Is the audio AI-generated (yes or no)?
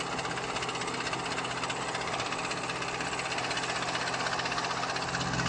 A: no